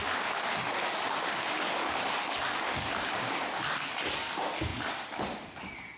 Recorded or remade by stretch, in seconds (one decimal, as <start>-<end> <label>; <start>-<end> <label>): 0.0-6.0 recorded